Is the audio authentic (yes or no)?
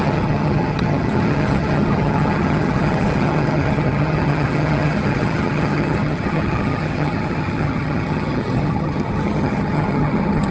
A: no